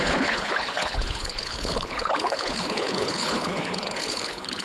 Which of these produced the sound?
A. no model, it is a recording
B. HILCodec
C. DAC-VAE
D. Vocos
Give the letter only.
B